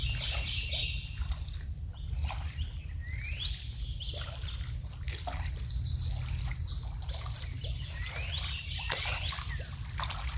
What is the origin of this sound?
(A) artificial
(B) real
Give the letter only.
B